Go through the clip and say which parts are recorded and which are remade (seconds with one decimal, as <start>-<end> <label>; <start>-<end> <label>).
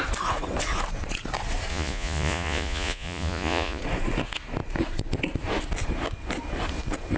0.0-1.7 recorded; 1.7-3.8 remade; 3.8-7.2 recorded